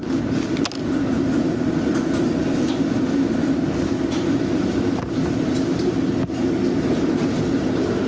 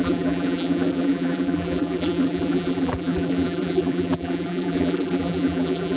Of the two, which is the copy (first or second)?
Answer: second